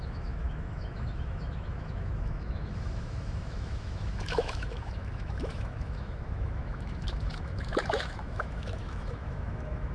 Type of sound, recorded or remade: remade